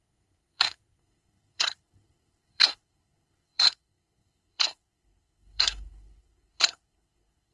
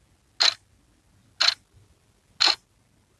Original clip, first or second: second